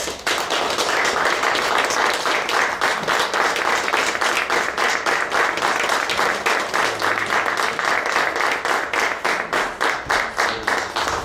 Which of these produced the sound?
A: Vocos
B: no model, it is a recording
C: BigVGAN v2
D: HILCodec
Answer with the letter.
B